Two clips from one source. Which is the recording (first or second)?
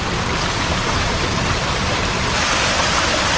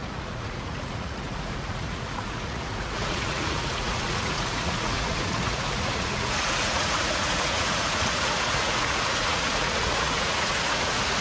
first